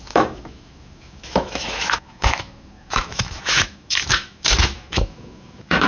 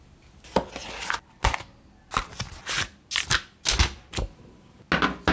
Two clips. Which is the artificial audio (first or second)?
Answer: first